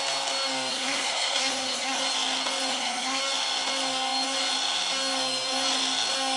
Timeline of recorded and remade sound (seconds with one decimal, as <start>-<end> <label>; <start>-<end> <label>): 0.0-0.7 recorded; 0.7-2.0 remade; 2.0-2.7 recorded; 2.7-3.2 remade; 3.2-6.4 recorded